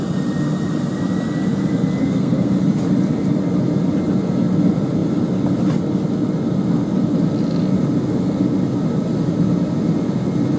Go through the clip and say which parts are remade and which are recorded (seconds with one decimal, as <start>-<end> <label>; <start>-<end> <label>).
0.0-2.0 recorded; 2.0-2.5 remade; 2.5-10.6 recorded